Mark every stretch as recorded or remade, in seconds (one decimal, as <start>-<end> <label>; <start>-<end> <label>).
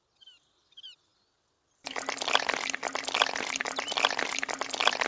0.0-5.1 recorded